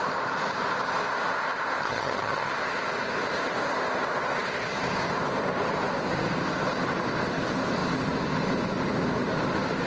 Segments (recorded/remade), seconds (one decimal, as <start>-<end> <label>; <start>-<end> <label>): 0.0-1.8 recorded; 1.8-2.5 remade; 2.5-9.9 recorded